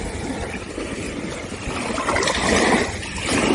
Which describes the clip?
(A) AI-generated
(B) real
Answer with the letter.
B